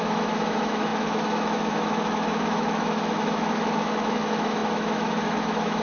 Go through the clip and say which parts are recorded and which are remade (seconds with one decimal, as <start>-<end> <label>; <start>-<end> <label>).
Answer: 0.0-5.8 remade